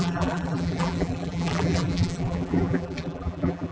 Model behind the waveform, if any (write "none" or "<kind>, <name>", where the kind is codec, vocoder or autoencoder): vocoder, BigVGAN v2